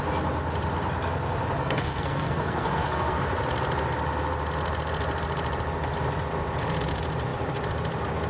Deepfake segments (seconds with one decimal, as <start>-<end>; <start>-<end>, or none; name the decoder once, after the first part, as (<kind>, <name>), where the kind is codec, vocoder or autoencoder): 1.6-3.2 (codec, SNAC)